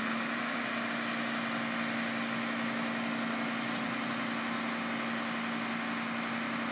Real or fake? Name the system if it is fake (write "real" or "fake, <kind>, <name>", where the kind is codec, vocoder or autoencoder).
real